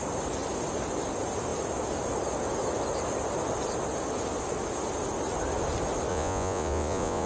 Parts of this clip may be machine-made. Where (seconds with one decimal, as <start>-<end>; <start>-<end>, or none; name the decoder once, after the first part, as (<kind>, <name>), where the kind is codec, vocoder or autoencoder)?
6.1-7.3 (vocoder, Vocos)